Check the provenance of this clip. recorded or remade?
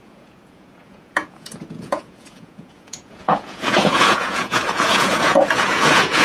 remade